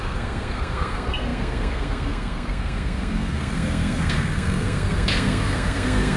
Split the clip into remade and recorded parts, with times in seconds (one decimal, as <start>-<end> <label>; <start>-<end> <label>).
0.0-6.2 remade